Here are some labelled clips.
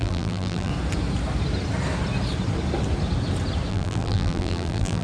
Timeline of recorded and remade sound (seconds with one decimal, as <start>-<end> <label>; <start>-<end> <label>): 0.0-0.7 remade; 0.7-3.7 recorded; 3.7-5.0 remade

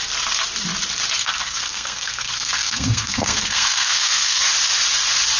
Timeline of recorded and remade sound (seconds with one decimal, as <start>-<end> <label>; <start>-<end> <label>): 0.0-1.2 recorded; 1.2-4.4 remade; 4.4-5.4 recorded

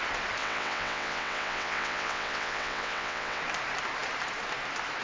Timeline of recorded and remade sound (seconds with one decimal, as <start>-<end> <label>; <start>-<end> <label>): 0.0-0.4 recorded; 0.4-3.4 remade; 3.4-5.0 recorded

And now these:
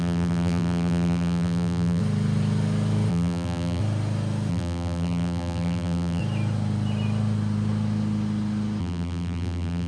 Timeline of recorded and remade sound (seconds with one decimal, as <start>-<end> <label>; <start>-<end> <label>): 0.0-2.0 remade; 2.0-3.1 recorded; 3.1-3.8 remade; 3.8-4.5 recorded; 4.5-6.2 remade; 6.2-8.8 recorded; 8.8-9.9 remade